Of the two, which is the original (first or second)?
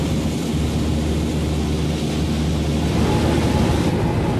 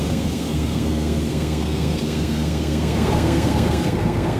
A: first